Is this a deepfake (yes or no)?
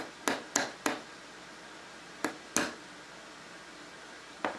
no